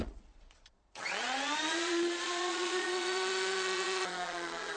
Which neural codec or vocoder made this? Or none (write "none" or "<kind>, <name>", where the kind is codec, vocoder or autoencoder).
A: vocoder, Vocos